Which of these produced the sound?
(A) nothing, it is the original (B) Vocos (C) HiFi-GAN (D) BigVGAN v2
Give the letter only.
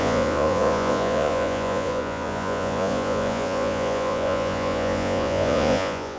B